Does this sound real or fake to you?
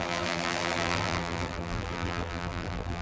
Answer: fake